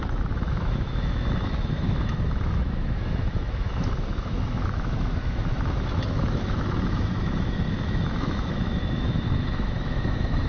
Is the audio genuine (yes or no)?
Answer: no